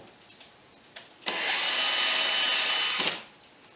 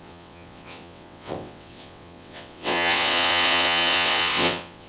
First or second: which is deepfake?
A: second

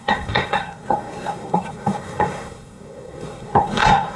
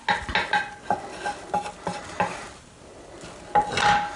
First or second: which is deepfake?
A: first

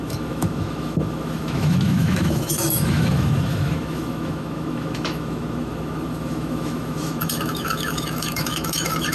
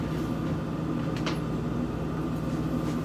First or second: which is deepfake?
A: first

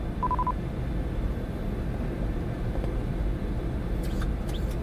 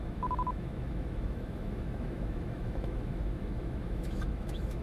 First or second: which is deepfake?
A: second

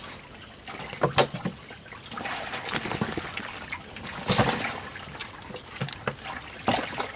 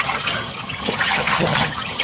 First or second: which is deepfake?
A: second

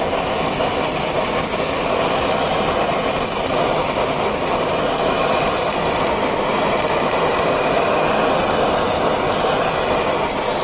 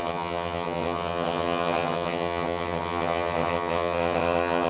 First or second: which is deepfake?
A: second